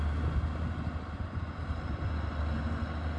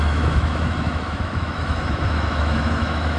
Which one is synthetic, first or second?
second